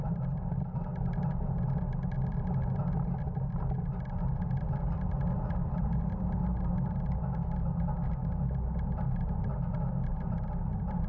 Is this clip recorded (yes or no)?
yes